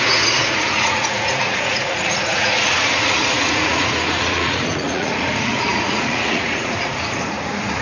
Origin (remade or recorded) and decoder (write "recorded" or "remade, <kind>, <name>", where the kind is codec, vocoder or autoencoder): remade, vocoder, Vocos